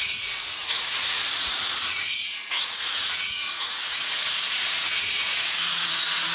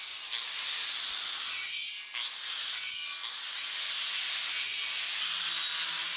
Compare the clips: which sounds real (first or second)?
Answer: second